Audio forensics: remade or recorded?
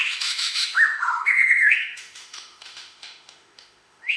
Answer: remade